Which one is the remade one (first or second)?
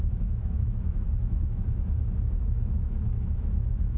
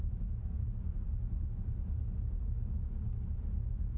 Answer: first